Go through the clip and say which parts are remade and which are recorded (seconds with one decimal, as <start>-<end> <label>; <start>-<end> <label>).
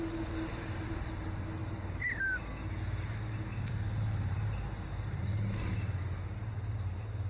0.0-7.3 recorded